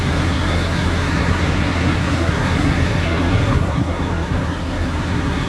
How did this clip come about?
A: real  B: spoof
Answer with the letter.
B